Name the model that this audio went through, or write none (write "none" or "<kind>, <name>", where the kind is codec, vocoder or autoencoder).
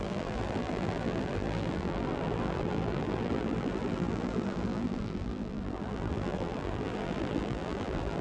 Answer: vocoder, BigVGAN v2